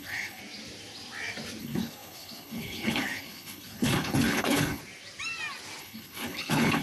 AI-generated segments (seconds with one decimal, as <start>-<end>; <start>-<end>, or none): 0.0-0.4; 1.6-4.8; 5.8-6.8